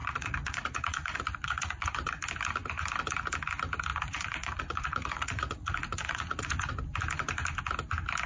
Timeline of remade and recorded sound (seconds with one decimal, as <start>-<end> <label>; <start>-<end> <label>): 0.0-2.1 remade; 2.1-3.9 recorded; 3.9-6.7 remade; 6.7-8.3 recorded